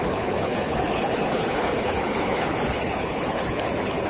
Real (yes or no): no